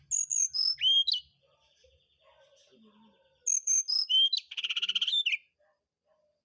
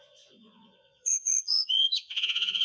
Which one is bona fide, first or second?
first